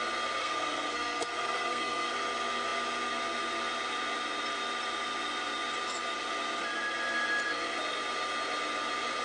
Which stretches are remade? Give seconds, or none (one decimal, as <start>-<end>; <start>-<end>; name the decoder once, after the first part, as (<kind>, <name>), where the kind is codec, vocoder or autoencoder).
0.4-2.1 (codec, SNAC)